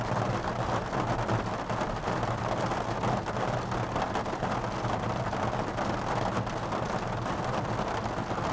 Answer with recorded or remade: recorded